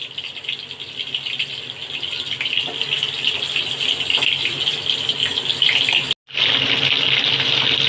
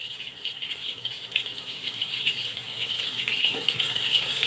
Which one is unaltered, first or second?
first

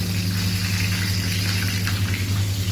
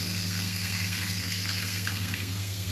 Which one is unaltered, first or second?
first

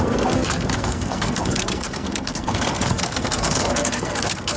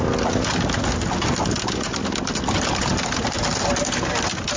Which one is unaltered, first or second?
second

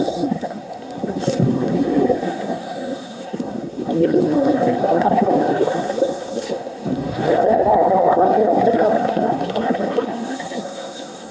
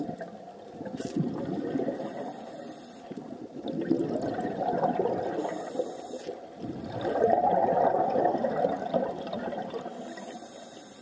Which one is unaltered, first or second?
second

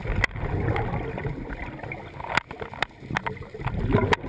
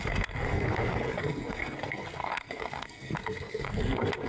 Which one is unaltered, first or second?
first